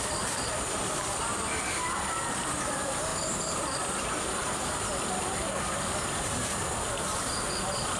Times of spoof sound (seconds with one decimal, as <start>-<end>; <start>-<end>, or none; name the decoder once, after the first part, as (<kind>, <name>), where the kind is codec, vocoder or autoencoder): 0.0-8.0 (vocoder, BigVGAN v2)

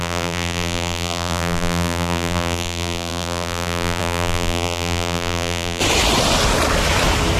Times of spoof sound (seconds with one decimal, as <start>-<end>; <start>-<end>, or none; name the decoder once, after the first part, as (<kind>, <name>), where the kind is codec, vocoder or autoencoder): 0.0-5.8 (vocoder, BigVGAN v2)

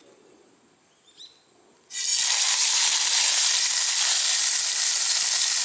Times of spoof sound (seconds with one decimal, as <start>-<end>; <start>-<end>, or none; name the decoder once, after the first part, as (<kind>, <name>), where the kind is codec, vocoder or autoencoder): none

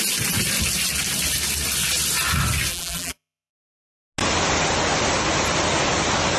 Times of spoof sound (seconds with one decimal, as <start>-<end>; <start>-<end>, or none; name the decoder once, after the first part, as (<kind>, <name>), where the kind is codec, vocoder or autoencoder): 2.7-3.5 (vocoder, BigVGAN v2)